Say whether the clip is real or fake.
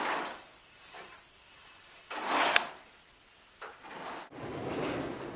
real